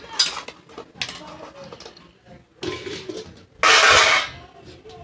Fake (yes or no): no